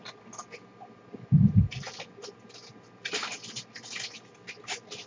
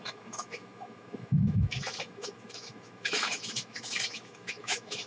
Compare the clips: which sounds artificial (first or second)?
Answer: second